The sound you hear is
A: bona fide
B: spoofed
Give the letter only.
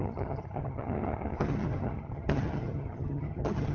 B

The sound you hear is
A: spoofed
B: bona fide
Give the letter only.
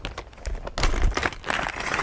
B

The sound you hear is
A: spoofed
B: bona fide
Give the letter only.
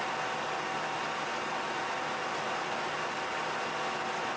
B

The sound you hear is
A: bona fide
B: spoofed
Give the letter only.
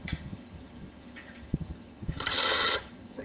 B